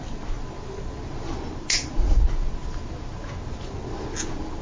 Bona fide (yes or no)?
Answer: yes